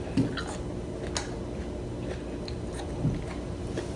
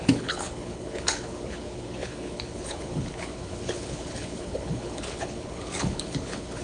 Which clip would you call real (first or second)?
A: first